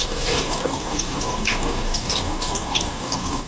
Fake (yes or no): yes